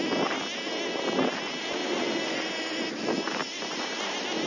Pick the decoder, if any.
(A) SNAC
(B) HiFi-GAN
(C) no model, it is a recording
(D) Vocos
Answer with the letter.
C